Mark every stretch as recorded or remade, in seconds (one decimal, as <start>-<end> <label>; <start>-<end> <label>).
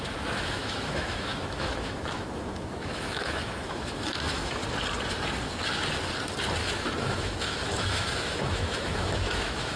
0.0-4.6 remade; 4.6-7.0 recorded; 7.0-9.8 remade